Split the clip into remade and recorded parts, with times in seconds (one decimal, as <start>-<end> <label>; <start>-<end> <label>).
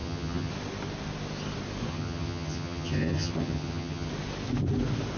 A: 0.0-0.5 remade; 0.5-1.9 recorded; 1.9-4.1 remade; 4.1-5.2 recorded